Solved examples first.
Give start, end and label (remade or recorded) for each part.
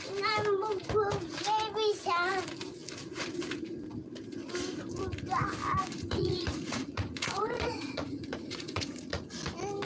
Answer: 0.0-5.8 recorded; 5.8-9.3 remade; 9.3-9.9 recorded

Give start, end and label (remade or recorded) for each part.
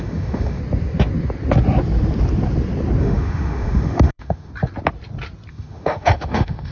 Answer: 0.0-0.6 remade; 0.6-3.0 recorded; 3.0-4.5 remade; 4.5-5.5 recorded; 5.5-6.7 remade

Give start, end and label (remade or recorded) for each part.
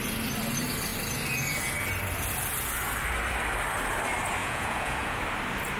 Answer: 0.0-4.4 recorded; 4.4-5.2 remade; 5.2-5.8 recorded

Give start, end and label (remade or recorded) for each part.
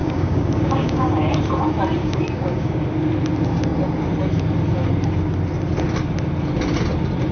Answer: 0.0-1.4 remade; 1.4-2.0 recorded; 2.0-2.8 remade; 2.8-7.3 recorded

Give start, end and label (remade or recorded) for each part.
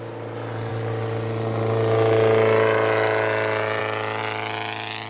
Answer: 0.0-5.1 recorded